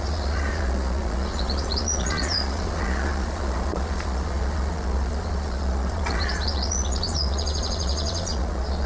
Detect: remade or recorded remade